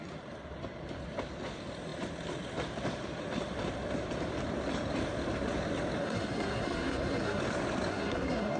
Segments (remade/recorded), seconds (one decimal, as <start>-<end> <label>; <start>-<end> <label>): 0.0-6.0 recorded; 6.0-7.4 remade; 7.4-7.9 recorded; 7.9-8.6 remade